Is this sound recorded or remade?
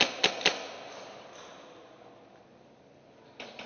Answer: recorded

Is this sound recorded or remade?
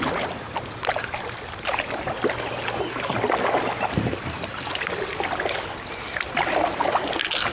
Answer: recorded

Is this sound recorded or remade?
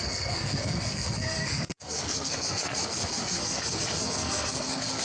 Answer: remade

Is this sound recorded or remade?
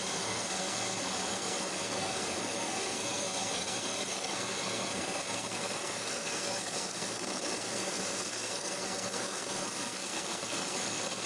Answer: remade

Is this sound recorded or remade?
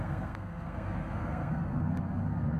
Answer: remade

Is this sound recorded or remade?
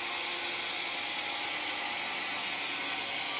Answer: recorded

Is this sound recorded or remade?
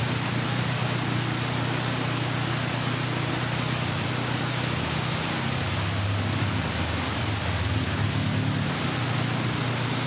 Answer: recorded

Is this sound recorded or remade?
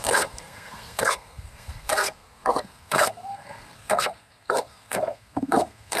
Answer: remade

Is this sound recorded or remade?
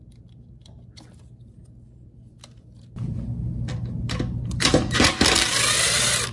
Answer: recorded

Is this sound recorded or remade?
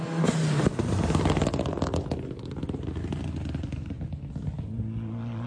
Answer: recorded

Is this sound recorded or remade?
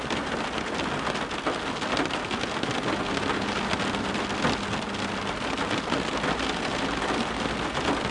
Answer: recorded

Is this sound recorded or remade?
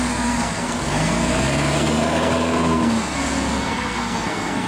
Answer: remade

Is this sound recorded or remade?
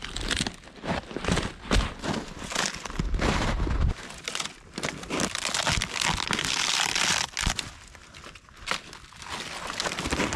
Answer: recorded